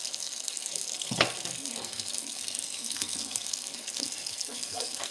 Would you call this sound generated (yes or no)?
yes